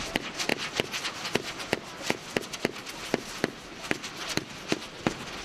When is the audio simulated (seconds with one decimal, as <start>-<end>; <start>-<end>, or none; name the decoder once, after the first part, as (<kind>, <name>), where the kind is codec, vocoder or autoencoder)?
none